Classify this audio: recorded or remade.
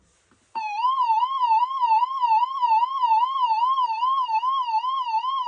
remade